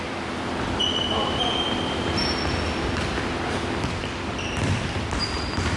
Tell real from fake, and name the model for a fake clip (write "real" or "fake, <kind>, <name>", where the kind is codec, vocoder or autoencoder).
fake, vocoder, BigVGAN v2